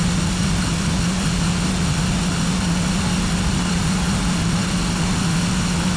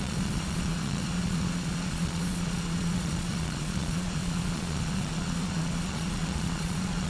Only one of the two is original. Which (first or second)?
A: first